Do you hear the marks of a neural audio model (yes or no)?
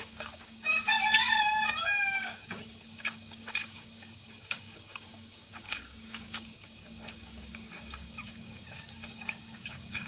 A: yes